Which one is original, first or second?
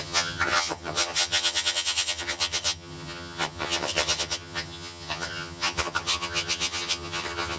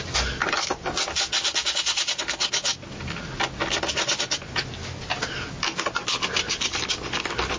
second